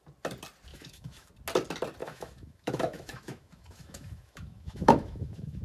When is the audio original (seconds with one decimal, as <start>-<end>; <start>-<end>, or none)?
0.0-0.7; 1.3-2.0